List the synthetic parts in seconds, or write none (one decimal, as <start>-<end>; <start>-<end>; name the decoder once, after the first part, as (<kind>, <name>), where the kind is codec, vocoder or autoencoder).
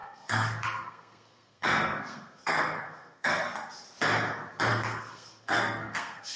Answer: 0.0-3.7 (codec, SNAC); 4.7-6.4